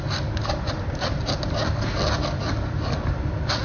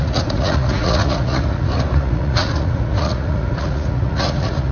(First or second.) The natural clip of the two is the first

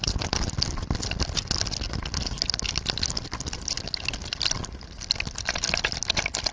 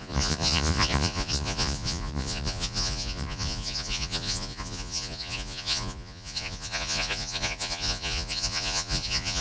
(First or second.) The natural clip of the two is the first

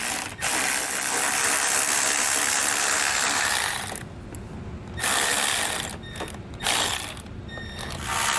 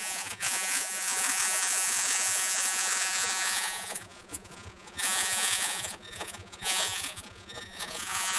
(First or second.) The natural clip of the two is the first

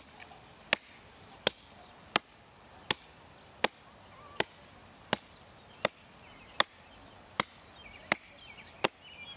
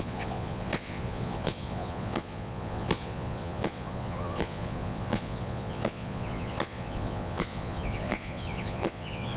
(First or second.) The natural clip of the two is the first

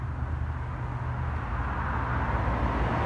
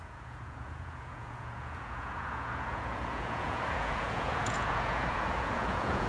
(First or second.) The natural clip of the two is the first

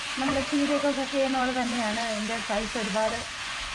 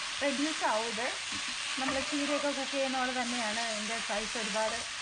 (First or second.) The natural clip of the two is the second